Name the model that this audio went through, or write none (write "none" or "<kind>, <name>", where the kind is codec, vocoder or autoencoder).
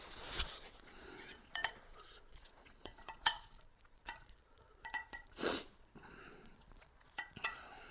vocoder, Vocos